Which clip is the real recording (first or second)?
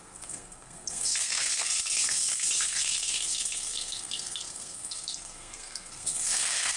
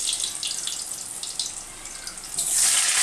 second